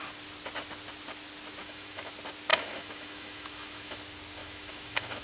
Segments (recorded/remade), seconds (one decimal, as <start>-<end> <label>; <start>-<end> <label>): 0.0-1.6 recorded; 1.6-2.1 remade; 2.1-2.5 recorded; 2.5-4.0 remade; 4.0-4.4 recorded; 4.4-5.2 remade

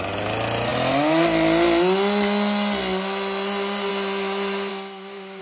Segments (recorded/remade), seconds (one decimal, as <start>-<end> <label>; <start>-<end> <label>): 0.0-4.7 recorded; 4.7-5.4 remade

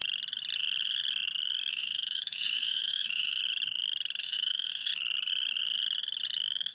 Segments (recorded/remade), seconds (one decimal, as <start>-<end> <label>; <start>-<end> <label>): 0.0-1.7 recorded; 1.7-3.4 remade; 3.4-4.2 recorded; 4.2-4.9 remade; 4.9-6.7 recorded